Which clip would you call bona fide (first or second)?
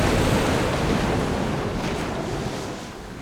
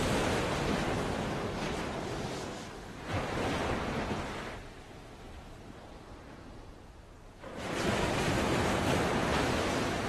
first